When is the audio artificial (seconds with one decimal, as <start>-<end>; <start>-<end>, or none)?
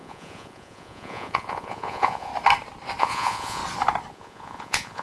0.0-2.3; 3.0-3.6; 4.1-5.0